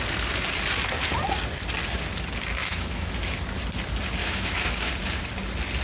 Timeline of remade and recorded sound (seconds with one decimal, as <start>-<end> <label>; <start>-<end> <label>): 0.0-2.6 recorded; 2.6-3.1 remade; 3.1-4.2 recorded; 4.2-4.9 remade; 4.9-5.8 recorded